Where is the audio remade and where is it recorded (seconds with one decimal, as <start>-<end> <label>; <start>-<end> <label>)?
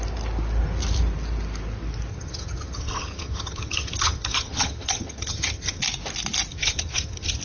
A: 0.0-2.1 recorded; 2.1-5.8 remade; 5.8-6.5 recorded; 6.5-7.4 remade